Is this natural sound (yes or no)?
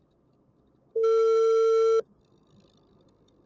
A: yes